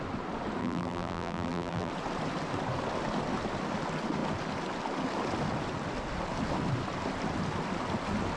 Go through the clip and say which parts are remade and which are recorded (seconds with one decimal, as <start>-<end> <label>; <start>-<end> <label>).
0.0-0.6 recorded; 0.6-1.9 remade; 1.9-8.4 recorded